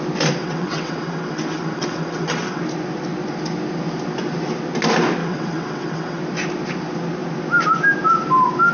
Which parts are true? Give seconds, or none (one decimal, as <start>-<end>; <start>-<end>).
0.0-0.4; 2.6-5.2; 6.2-8.7